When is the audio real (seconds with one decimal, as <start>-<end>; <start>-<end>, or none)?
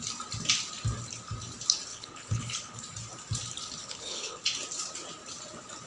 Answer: 0.0-1.9; 2.8-3.8; 4.4-5.9